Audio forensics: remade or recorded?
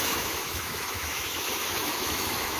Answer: remade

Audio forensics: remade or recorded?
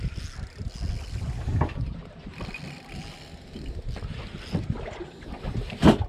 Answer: recorded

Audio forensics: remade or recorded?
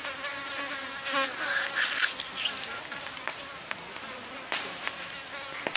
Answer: recorded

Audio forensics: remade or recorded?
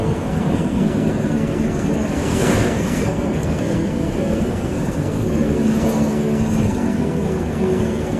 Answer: remade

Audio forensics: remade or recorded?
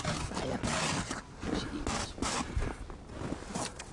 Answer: recorded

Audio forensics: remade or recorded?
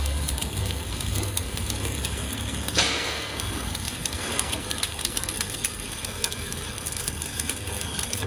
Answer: remade